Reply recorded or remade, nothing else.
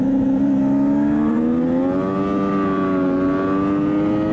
recorded